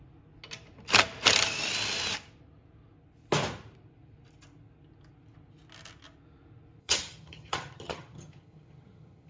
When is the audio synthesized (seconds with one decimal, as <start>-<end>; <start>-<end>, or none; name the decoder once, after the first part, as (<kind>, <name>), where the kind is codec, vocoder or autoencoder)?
6.8-9.3 (vocoder, HiFi-GAN)